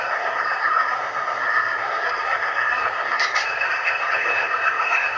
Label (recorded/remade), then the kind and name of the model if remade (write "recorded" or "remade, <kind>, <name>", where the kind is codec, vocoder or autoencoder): remade, codec, SNAC